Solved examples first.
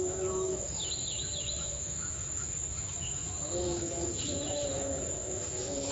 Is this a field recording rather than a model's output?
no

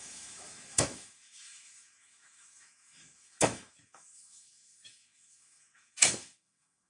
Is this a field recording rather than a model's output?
no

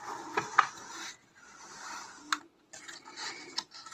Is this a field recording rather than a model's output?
yes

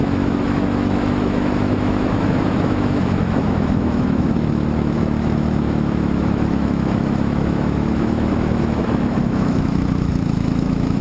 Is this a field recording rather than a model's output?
no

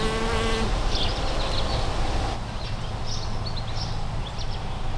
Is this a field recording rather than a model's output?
yes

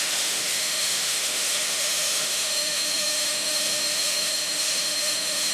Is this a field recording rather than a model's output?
no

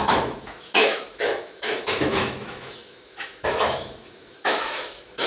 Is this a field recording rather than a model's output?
no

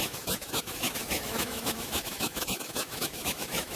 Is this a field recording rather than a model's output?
no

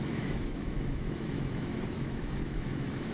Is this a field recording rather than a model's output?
no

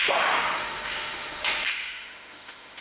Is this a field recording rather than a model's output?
no